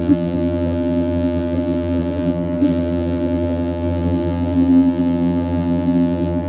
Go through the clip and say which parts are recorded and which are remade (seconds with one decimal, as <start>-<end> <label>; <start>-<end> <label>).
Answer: 0.0-6.5 remade